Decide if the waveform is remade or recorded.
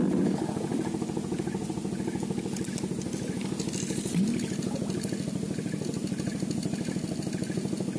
recorded